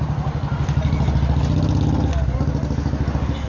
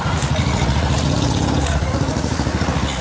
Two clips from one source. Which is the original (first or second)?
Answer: first